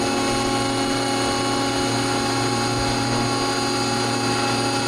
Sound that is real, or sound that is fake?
real